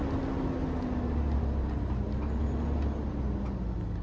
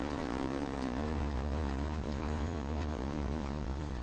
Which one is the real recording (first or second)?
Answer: first